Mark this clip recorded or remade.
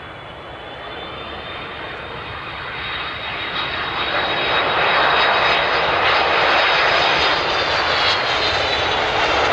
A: recorded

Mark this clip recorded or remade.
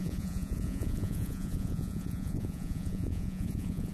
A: remade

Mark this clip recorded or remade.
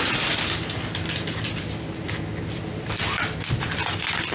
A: recorded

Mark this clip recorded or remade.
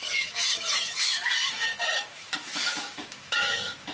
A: remade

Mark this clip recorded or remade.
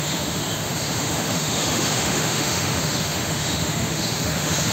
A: remade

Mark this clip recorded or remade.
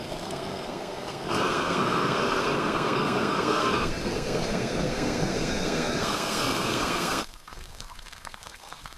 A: remade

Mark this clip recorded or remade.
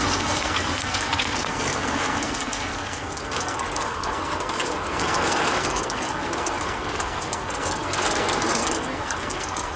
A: remade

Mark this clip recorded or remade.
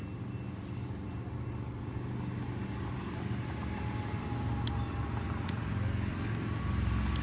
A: recorded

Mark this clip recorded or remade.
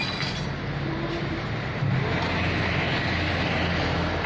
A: recorded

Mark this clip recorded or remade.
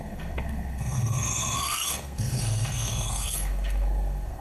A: remade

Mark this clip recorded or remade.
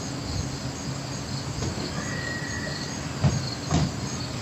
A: recorded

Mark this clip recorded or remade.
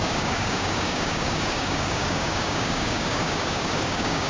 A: remade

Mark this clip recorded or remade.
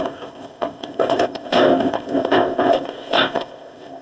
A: remade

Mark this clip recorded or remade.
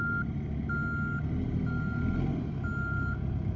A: recorded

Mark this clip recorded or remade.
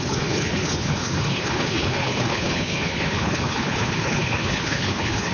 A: remade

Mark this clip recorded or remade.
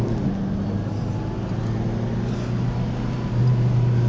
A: recorded